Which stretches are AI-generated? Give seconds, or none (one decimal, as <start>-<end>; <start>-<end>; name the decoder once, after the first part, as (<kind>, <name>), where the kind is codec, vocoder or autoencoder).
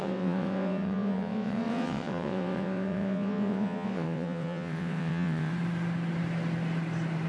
0.0-5.5 (vocoder, WaveNeXt)